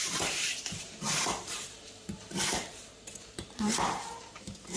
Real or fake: fake